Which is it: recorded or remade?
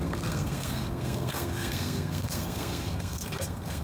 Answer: remade